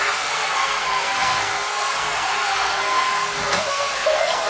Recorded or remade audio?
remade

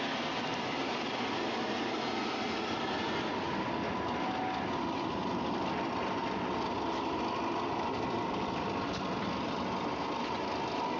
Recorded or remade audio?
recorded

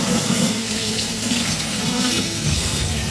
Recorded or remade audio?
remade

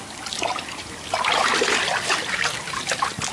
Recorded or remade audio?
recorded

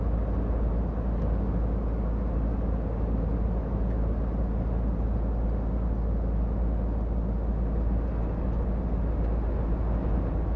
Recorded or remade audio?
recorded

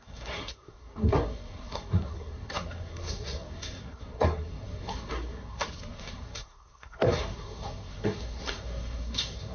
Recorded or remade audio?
remade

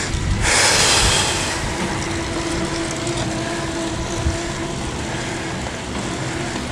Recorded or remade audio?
recorded